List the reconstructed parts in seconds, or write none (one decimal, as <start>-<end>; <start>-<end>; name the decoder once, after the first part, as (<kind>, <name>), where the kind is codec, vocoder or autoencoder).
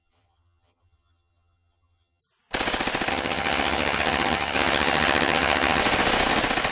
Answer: 0.0-2.2 (vocoder, HiFi-GAN); 3.1-5.8